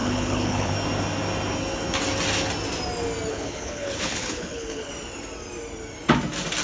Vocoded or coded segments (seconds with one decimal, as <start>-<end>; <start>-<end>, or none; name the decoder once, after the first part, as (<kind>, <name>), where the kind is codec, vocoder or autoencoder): 0.0-0.7 (codec, HILCodec); 3.3-4.9